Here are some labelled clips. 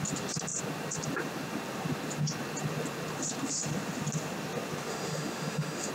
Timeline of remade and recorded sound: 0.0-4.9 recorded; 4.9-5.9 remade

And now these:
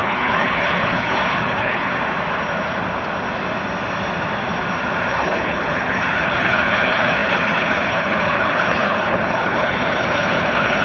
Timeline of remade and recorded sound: 0.0-1.9 remade; 1.9-5.1 recorded; 5.1-10.8 remade

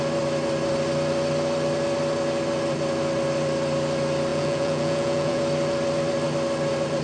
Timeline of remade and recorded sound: 0.0-4.3 recorded; 4.3-5.4 remade; 5.4-7.0 recorded

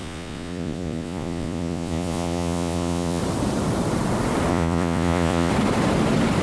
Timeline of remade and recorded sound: 0.0-3.2 remade; 3.2-4.5 recorded; 4.5-5.5 remade; 5.5-6.4 recorded

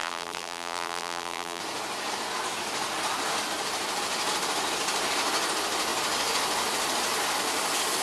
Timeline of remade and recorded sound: 0.0-1.6 remade; 1.6-8.0 recorded

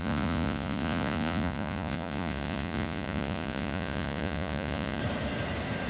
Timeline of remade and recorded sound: 0.0-5.0 remade; 5.0-5.9 recorded

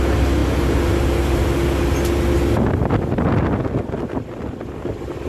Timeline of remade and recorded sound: 0.0-5.3 recorded

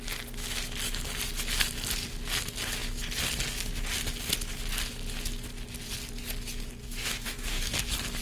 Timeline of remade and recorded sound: 0.0-6.8 recorded; 6.8-7.7 remade; 7.7-8.2 recorded